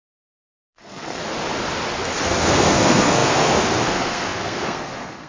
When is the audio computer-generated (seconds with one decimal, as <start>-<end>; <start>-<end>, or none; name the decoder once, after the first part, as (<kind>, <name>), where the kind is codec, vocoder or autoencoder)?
0.0-1.3 (codec, SNAC); 2.2-5.3